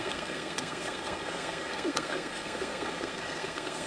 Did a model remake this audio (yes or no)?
yes